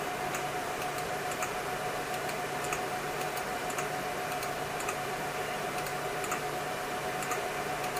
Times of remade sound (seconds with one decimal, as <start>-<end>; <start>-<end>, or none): 0.0-5.9; 6.7-8.0